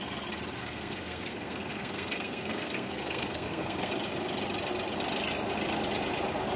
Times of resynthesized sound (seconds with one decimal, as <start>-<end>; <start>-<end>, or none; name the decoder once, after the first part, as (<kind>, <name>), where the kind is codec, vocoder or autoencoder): 0.6-3.9 (codec, SNAC)